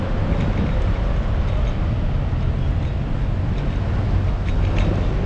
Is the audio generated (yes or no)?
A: no